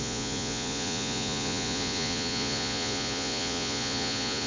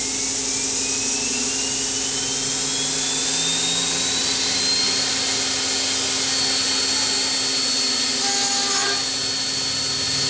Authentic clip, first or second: second